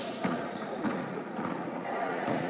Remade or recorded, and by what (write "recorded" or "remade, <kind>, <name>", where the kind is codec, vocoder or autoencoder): remade, vocoder, Vocos